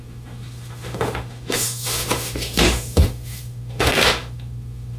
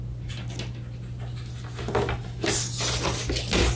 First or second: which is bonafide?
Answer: second